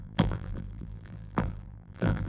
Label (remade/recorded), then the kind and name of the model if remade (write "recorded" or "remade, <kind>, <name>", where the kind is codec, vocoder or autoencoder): remade, vocoder, BigVGAN v2